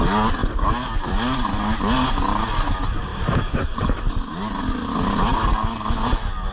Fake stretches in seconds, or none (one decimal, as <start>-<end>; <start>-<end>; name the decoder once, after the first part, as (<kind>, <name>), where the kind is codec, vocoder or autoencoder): 3.1-4.0 (vocoder, BigVGAN v2)